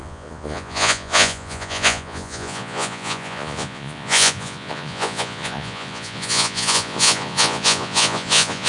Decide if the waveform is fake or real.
fake